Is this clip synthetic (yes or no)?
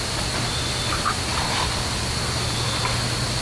no